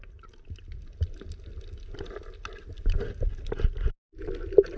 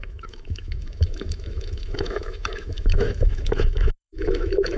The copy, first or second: second